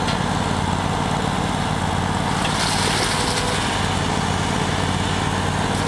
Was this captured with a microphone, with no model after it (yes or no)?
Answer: yes